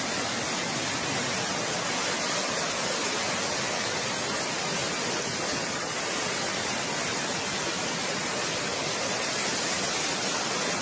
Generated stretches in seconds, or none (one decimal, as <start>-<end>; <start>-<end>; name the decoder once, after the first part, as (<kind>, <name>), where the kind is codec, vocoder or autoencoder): none